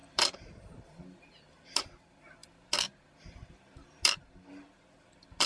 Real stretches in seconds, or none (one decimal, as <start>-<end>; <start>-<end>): 0.0-5.5